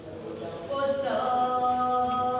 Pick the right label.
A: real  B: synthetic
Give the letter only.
A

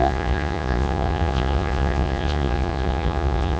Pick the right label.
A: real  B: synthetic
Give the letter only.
B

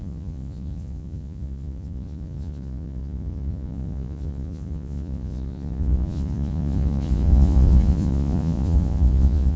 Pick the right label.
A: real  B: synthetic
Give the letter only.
B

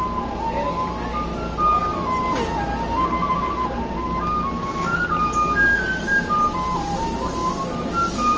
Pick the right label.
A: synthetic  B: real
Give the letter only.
B